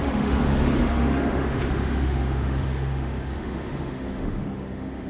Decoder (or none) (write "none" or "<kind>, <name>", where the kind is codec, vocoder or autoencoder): autoencoder, DAC-VAE